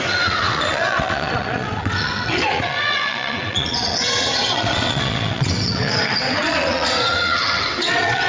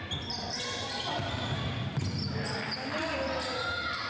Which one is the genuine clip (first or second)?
second